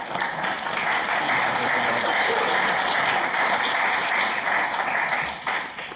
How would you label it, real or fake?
real